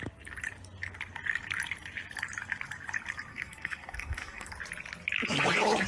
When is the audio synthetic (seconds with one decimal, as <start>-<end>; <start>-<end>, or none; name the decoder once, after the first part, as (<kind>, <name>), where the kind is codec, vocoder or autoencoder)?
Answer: 3.3-4.5 (codec, SNAC)